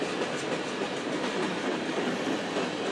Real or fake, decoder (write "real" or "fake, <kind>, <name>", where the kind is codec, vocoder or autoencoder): real